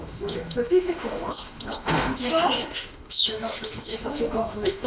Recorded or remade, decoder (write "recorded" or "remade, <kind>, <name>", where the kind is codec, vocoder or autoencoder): remade, autoencoder, DAC-VAE